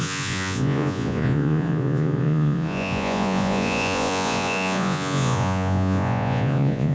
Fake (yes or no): yes